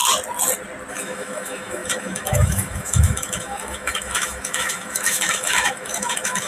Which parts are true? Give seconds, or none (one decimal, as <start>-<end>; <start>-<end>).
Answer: 0.0-0.9